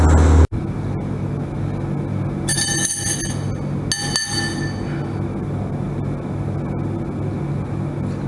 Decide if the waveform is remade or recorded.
recorded